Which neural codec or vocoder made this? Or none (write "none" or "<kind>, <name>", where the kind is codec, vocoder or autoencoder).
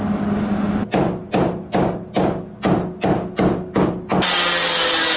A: none